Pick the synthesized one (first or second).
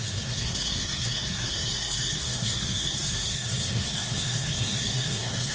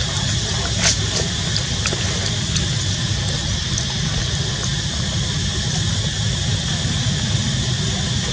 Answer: first